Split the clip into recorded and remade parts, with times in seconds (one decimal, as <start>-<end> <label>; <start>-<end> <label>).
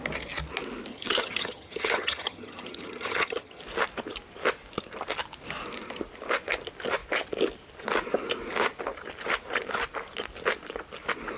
0.0-0.9 recorded; 0.9-3.6 remade; 3.6-11.4 recorded